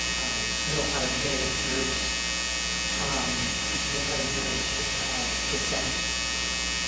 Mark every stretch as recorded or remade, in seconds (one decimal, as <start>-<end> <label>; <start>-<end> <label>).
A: 0.0-0.7 recorded; 0.7-2.1 remade; 2.1-2.9 recorded; 2.9-6.0 remade; 6.0-6.9 recorded